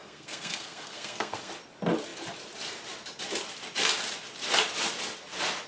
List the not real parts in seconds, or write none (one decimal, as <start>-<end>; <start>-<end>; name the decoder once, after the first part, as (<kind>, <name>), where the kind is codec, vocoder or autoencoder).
0.0-1.5 (codec, SNAC)

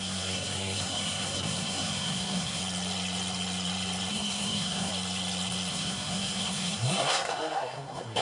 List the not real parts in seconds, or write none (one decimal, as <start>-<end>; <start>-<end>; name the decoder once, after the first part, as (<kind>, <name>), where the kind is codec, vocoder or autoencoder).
0.0-2.6 (codec, SNAC); 4.1-4.9; 5.7-8.2

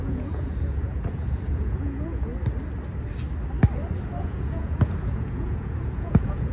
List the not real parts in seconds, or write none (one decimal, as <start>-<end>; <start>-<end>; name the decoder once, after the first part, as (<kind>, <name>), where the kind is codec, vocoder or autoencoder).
0.0-2.3 (vocoder, Vocos); 4.2-6.5

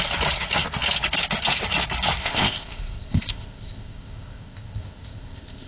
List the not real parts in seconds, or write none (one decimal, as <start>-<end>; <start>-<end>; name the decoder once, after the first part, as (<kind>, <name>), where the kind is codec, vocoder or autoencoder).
2.2-5.7 (codec, ZipCodec)